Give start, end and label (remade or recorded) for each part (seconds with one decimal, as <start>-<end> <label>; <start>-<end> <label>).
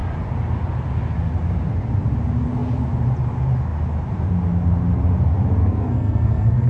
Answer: 0.0-5.6 recorded; 5.6-6.7 remade